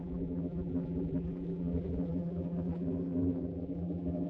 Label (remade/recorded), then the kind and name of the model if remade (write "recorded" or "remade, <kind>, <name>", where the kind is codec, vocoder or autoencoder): remade, vocoder, BigVGAN v2